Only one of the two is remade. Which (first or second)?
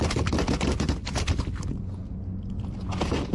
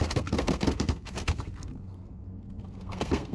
second